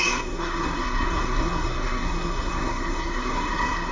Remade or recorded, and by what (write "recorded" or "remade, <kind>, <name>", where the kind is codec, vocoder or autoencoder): remade, codec, SNAC